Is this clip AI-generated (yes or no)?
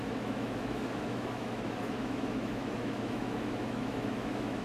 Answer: yes